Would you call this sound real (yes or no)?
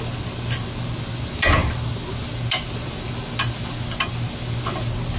yes